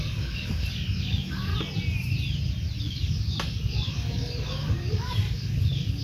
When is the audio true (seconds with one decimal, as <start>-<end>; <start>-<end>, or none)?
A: 1.5-2.8